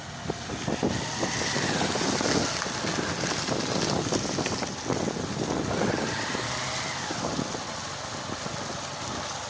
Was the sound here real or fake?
real